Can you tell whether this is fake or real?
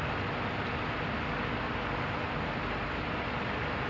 real